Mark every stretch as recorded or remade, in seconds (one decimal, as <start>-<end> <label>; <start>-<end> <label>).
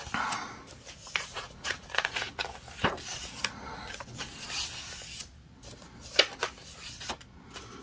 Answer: 0.0-1.0 recorded; 1.0-2.4 remade; 2.4-7.8 recorded